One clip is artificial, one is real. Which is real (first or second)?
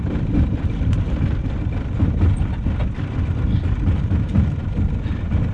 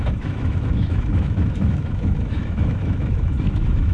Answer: first